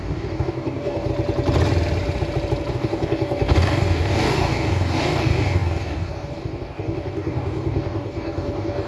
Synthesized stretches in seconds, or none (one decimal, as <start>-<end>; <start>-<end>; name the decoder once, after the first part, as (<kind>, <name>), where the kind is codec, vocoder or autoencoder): 0.0-1.1 (codec, DAC); 2.7-8.9